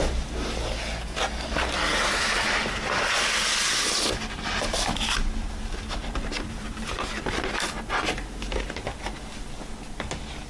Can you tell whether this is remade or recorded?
recorded